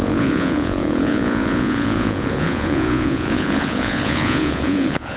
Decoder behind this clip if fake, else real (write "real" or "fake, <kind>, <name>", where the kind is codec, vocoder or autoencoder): fake, vocoder, Vocos